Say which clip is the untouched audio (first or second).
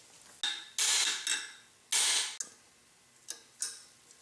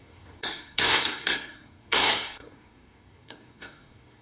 first